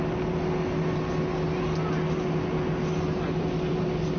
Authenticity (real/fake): real